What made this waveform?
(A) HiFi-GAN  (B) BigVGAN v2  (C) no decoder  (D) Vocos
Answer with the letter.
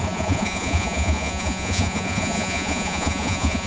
D